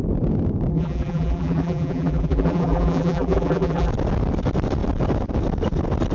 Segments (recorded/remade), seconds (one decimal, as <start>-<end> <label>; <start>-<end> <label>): 0.0-0.7 recorded; 0.7-3.9 remade; 3.9-6.1 recorded

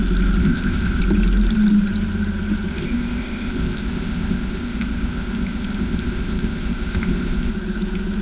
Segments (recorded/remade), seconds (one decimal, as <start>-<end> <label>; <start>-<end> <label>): 0.0-0.4 recorded; 0.4-1.0 remade; 1.0-2.7 recorded; 2.7-7.5 remade; 7.5-8.2 recorded

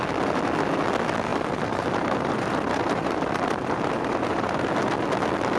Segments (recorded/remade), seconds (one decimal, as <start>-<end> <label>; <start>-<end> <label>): 0.0-1.3 recorded; 1.3-4.7 remade; 4.7-5.6 recorded